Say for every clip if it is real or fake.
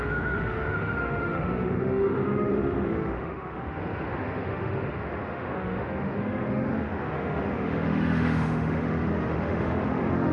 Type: fake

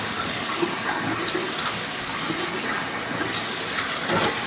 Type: real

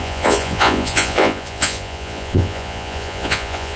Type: fake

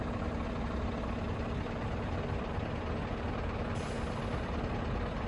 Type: real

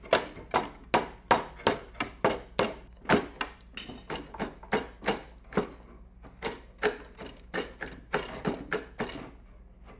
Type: real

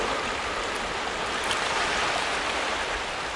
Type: real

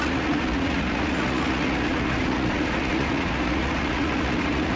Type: fake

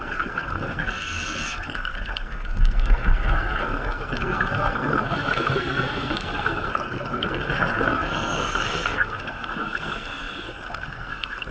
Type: fake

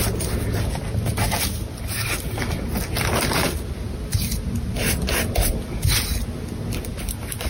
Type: real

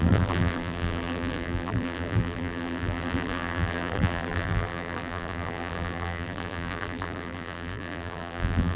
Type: fake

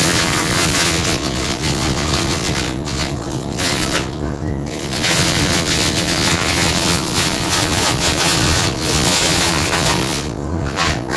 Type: fake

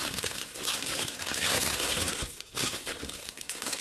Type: fake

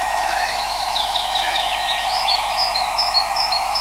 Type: fake